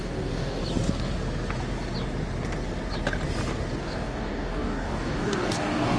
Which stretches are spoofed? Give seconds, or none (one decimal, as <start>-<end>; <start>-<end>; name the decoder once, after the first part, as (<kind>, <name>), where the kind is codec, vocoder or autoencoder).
0.0-0.6 (codec, DAC); 3.8-6.0